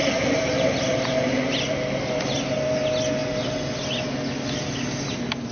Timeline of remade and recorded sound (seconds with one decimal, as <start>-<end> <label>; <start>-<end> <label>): 0.0-5.5 recorded